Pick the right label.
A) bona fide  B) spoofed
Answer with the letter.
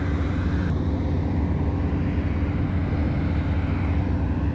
A